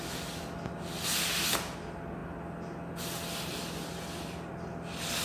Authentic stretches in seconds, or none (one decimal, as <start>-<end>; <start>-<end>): 0.0-5.2

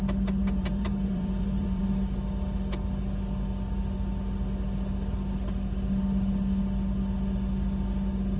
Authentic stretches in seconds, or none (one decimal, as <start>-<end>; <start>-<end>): 0.0-0.4; 1.8-8.4

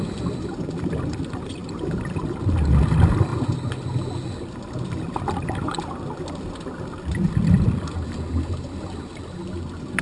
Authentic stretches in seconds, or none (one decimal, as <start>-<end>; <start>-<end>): 0.0-10.0

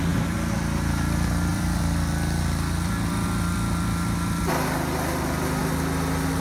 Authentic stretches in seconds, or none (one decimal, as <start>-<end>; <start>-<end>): 0.0-1.5; 2.4-6.4